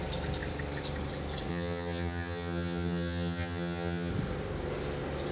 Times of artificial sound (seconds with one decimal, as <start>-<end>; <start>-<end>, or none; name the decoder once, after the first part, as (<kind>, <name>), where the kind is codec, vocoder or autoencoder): 1.5-4.1 (vocoder, HiFi-GAN)